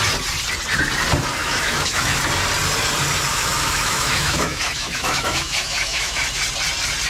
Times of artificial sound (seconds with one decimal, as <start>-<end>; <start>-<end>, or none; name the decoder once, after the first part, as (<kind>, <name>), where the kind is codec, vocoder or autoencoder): 1.4-2.2 (autoencoder, DAC-VAE); 3.3-6.2